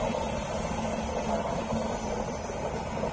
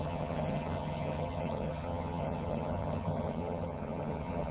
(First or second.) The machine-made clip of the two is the second